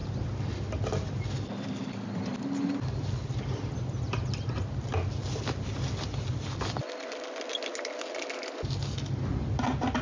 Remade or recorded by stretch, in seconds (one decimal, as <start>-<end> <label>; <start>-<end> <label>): 0.0-10.0 recorded